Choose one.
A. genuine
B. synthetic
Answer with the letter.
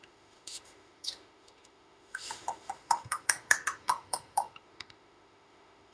B